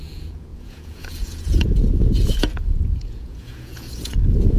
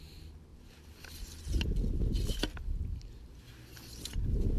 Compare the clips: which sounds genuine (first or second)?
second